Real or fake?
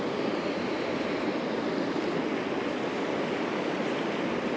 real